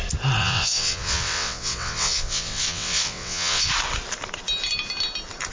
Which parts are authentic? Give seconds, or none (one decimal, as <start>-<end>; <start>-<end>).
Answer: 0.0-0.4; 3.7-5.5